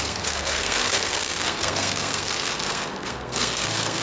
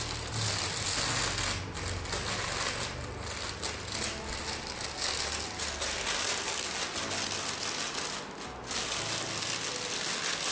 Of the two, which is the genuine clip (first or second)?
second